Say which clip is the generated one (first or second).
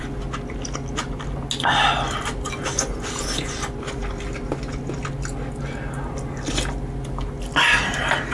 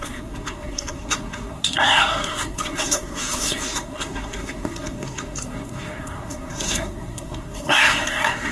second